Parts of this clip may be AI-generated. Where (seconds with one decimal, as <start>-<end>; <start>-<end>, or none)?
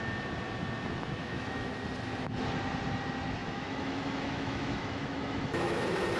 1.2-1.7; 3.4-5.8